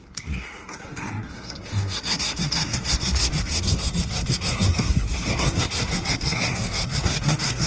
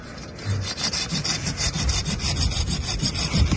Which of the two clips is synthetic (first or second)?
first